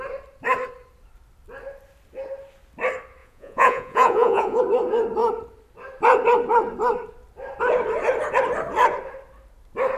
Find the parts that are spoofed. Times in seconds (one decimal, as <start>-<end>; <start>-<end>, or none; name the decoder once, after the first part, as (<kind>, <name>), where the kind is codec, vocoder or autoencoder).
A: 3.2-4.6 (vocoder, Vocos)